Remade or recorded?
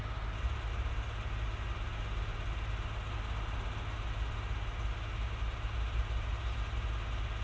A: recorded